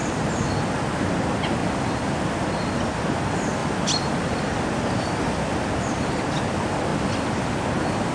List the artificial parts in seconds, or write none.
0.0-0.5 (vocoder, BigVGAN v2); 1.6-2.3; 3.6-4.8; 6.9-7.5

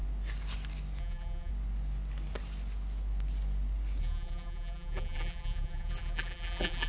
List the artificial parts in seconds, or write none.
1.0-1.5 (vocoder, BigVGAN v2); 4.0-6.9

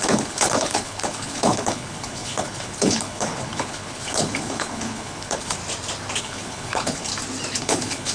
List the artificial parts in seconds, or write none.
0.0-5.6 (codec, HILCodec); 6.2-7.1; 7.6-8.1